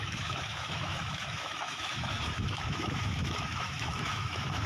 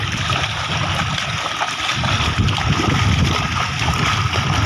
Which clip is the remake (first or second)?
first